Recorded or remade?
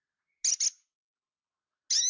recorded